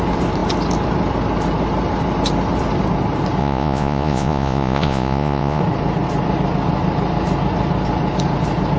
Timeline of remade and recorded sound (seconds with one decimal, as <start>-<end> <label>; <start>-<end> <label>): 0.0-3.4 recorded; 3.4-5.6 remade; 5.6-8.8 recorded